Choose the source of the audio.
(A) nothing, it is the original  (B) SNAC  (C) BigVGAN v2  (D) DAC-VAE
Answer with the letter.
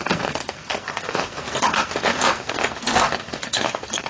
B